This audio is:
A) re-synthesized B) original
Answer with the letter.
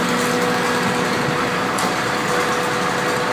B